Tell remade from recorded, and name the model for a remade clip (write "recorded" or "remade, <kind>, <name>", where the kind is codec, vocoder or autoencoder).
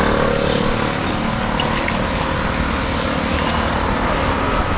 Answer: recorded